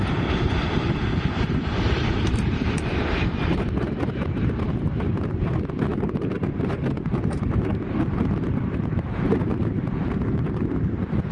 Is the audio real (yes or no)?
no